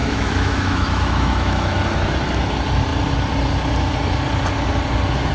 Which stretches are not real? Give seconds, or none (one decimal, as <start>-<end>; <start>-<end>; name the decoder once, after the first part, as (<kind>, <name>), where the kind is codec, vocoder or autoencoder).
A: 0.0-1.8 (autoencoder, DAC-VAE)